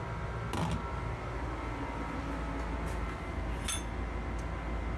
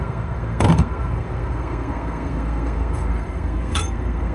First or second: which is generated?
second